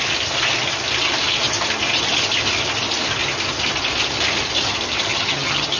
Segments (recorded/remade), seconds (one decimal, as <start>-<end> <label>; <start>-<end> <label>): 0.0-5.1 recorded; 5.1-5.8 remade